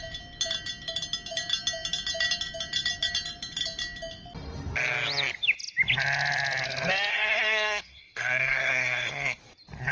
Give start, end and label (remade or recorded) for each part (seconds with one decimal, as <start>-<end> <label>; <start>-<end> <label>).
0.0-7.1 recorded; 7.1-9.4 remade; 9.4-9.9 recorded